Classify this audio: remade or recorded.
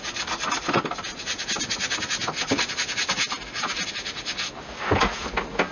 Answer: recorded